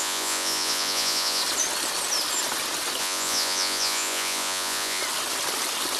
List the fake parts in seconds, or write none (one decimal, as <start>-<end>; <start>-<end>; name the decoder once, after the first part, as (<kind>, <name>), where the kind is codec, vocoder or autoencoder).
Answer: 0.0-1.4 (vocoder, Vocos); 3.0-5.0